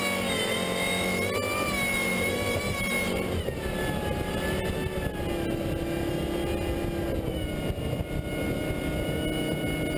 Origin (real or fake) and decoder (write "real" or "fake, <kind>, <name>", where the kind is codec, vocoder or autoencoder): real